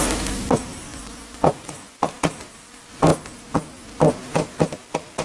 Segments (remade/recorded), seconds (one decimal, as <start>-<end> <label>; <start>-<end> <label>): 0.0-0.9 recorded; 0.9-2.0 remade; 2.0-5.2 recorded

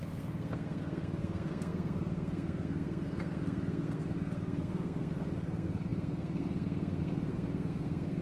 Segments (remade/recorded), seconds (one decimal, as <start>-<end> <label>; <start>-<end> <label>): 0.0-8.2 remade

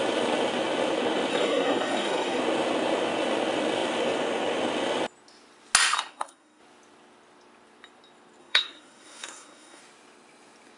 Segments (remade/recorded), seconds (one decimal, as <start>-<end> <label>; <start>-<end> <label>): 0.0-1.3 recorded; 1.3-2.4 remade; 2.4-6.1 recorded; 6.1-6.6 remade; 6.6-8.4 recorded; 8.4-9.8 remade; 9.8-10.8 recorded

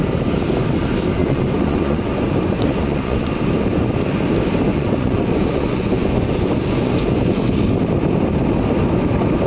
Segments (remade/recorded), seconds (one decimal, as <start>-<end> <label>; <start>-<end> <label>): 0.0-1.2 recorded; 1.2-3.3 remade; 3.3-4.7 recorded; 4.7-7.6 remade; 7.6-9.5 recorded